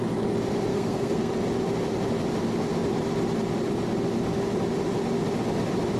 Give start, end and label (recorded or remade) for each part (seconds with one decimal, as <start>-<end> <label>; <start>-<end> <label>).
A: 0.0-0.7 recorded; 0.7-1.3 remade; 1.3-6.0 recorded